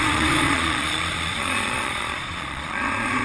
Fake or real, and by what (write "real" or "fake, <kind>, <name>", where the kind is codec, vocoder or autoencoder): fake, vocoder, Vocos